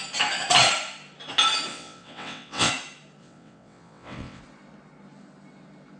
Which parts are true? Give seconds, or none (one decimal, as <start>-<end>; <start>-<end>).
0.0-1.7; 2.7-3.2; 4.4-6.0